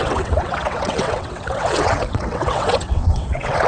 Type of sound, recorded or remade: remade